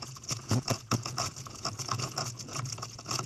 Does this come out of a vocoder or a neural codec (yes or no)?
yes